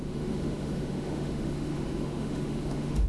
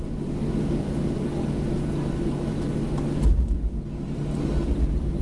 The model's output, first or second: first